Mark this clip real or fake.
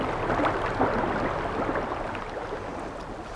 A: real